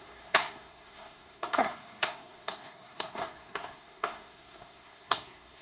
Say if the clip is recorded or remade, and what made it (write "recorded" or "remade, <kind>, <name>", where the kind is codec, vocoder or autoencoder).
remade, codec, SNAC